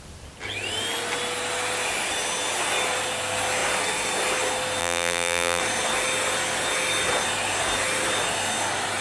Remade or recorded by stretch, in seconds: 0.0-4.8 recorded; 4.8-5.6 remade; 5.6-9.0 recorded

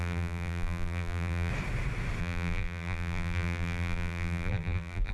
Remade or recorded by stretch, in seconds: 0.0-1.5 remade; 1.5-2.2 recorded; 2.2-5.1 remade